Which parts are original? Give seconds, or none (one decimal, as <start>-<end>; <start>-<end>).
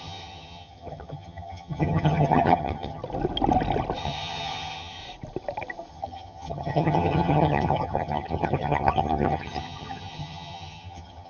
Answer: 3.0-4.0; 5.0-5.9